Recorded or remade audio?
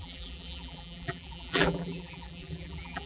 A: remade